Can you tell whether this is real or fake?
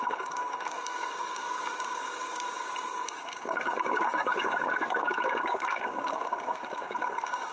fake